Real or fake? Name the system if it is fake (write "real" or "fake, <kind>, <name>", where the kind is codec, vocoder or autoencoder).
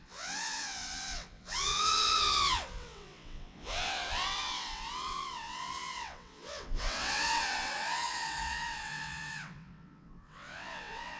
fake, vocoder, WaveNeXt